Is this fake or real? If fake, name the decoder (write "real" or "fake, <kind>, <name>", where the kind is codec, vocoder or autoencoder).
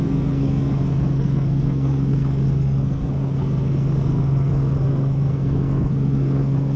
fake, codec, SNAC